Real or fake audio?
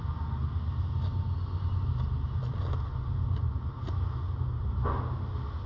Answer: real